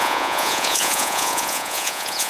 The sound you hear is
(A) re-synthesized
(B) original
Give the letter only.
A